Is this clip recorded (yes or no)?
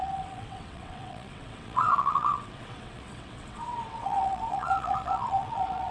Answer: no